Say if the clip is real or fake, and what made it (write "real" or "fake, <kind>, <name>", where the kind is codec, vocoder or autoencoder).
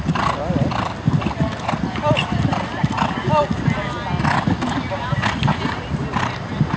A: real